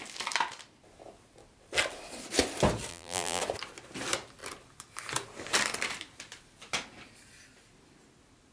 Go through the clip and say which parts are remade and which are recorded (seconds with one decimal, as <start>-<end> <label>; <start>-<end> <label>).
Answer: 0.0-2.9 recorded; 2.9-3.4 remade; 3.4-8.5 recorded